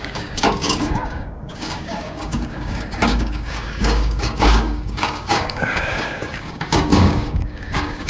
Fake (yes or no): yes